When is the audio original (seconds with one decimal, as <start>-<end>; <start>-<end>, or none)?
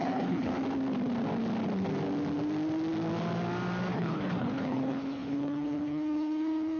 0.5-3.9